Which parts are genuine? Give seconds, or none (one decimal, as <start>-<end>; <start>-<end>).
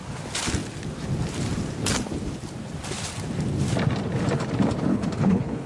0.0-4.9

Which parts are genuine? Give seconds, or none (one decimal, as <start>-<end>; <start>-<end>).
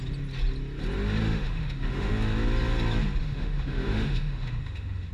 0.0-1.2; 2.1-3.2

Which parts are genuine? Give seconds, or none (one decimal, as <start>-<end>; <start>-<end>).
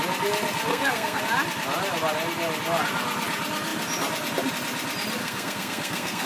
0.0-0.7; 1.2-5.2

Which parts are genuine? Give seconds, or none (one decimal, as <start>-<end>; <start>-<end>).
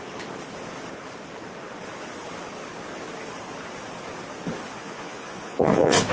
0.0-4.8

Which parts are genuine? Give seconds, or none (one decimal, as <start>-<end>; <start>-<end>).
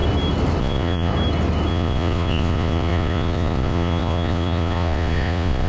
0.0-0.6; 1.1-1.7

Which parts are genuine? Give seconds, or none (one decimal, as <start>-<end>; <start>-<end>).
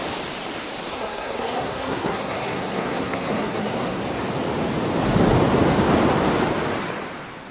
0.0-0.9; 4.0-7.5